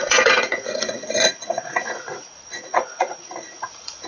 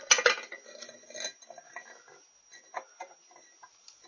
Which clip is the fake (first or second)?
first